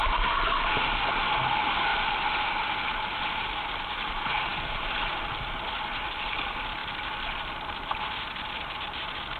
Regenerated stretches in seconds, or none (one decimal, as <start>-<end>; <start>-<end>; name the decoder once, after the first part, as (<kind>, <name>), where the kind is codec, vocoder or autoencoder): none